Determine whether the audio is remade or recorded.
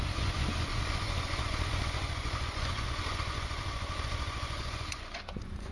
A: remade